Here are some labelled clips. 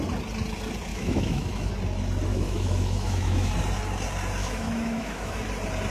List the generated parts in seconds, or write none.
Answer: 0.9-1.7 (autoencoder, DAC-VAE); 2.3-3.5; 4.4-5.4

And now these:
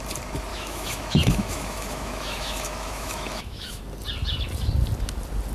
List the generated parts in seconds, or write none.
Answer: 0.5-3.8 (autoencoder, DAC-VAE)

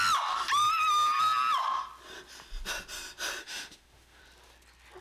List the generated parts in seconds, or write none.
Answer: 3.4-4.2 (autoencoder, DAC-VAE)

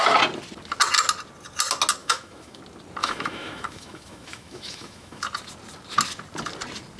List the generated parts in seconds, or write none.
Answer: 2.0-2.6 (autoencoder, DAC-VAE); 3.0-5.2

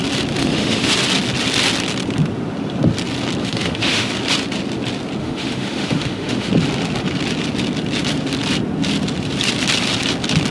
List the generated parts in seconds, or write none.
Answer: 0.4-0.9 (autoencoder, DAC-VAE); 3.4-4.1; 5.2-6.5